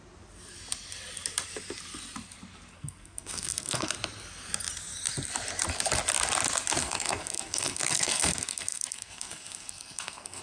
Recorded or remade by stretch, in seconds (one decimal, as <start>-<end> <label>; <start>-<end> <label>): 0.0-2.7 recorded; 2.7-3.9 remade; 3.9-6.8 recorded; 6.8-10.4 remade